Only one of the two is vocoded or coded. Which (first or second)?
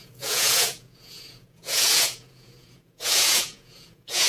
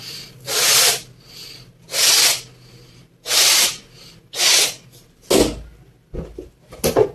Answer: first